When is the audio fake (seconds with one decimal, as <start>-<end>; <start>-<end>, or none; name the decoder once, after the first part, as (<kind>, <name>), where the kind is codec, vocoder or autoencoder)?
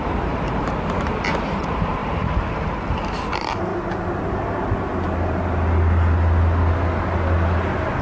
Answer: 0.0-3.7 (vocoder, BigVGAN v2)